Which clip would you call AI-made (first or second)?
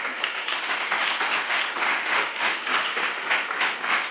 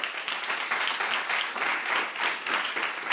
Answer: first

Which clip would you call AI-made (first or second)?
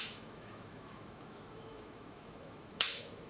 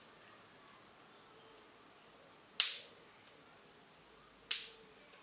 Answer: first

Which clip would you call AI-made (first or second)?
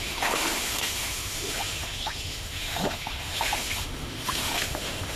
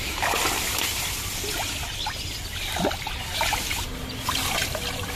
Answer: first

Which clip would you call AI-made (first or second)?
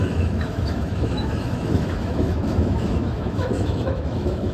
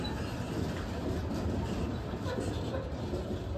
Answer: first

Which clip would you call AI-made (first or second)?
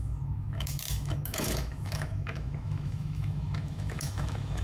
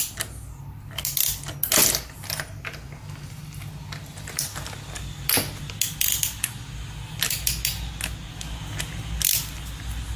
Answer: first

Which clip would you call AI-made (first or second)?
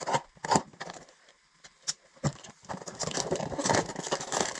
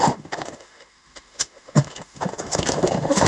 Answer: second